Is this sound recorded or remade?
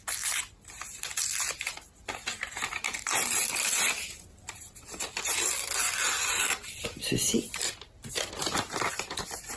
recorded